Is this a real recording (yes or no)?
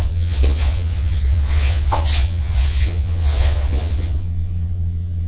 no